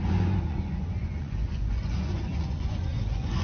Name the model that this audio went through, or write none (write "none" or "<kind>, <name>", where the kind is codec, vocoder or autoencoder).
vocoder, Vocos